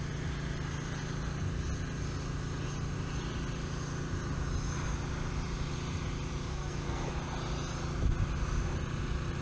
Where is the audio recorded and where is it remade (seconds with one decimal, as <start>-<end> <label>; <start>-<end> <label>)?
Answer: 0.0-6.5 recorded; 6.5-7.1 remade; 7.1-9.4 recorded